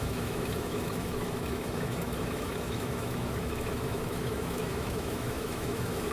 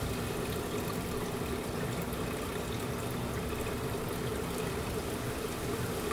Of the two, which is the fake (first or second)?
first